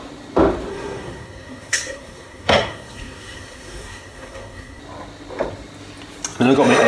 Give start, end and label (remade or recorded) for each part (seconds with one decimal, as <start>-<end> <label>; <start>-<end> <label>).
0.0-0.7 recorded; 0.7-4.8 remade; 4.8-6.9 recorded